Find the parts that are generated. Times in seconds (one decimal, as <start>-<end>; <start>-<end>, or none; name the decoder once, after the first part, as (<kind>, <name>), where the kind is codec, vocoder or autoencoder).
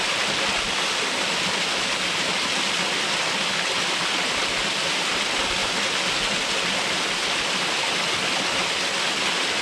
none